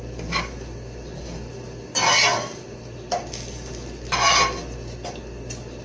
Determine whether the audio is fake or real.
real